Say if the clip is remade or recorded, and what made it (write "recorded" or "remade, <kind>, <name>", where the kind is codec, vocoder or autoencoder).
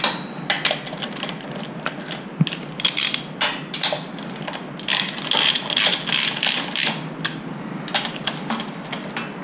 recorded